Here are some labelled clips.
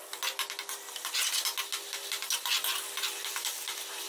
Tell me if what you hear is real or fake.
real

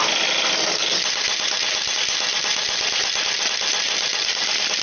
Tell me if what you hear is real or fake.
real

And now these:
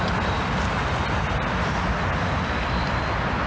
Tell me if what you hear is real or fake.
real